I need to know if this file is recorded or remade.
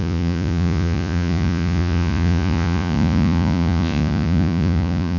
remade